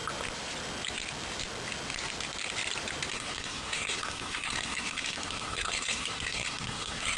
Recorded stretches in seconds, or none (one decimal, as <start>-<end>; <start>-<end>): 0.0-3.1